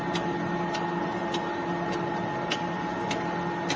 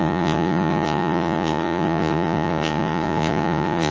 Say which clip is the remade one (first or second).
second